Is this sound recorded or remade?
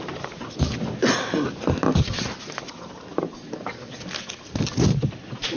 recorded